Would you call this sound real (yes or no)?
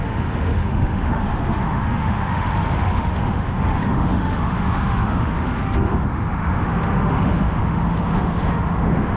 no